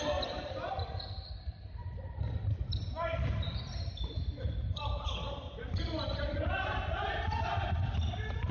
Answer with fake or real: real